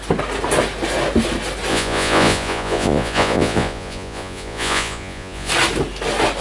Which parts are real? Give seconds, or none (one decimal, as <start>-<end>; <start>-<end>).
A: 0.0-1.7; 5.5-6.4